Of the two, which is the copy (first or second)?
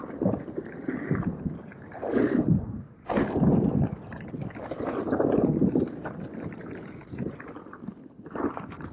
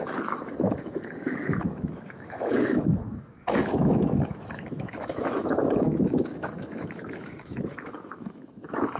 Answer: second